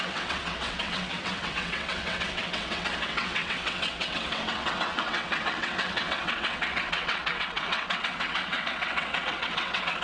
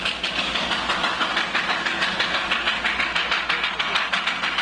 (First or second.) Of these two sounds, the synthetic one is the first